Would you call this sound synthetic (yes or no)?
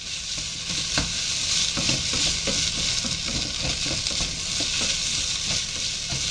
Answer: no